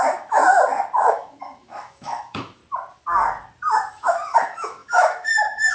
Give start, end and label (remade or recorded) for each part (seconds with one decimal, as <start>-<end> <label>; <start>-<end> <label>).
0.0-0.4 remade; 0.4-1.1 recorded; 1.1-2.6 remade; 2.6-3.9 recorded; 3.9-5.7 remade

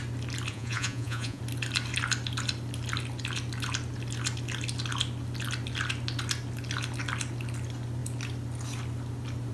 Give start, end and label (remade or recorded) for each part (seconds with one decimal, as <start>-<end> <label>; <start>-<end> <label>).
0.0-0.5 recorded; 0.5-1.4 remade; 1.4-9.5 recorded

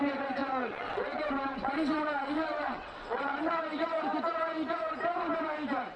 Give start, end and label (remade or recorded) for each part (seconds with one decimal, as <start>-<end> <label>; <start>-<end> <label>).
0.0-0.4 recorded; 0.4-4.0 remade; 4.0-6.0 recorded

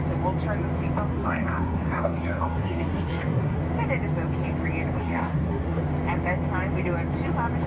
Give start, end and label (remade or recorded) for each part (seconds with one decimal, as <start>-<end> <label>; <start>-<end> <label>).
0.0-1.1 recorded; 1.1-3.6 remade; 3.6-5.0 recorded; 5.0-5.8 remade; 5.8-7.7 recorded

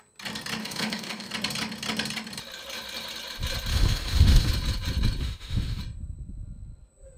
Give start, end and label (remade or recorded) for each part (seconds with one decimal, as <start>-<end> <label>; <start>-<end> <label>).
0.0-0.6 recorded; 0.6-1.3 remade; 1.3-3.7 recorded; 3.7-4.5 remade; 4.5-5.2 recorded; 5.2-5.8 remade; 5.8-7.2 recorded

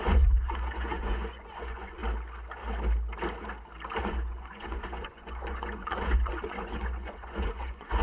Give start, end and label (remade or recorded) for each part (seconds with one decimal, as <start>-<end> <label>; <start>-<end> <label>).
0.0-2.0 remade; 2.0-4.0 recorded; 4.0-8.0 remade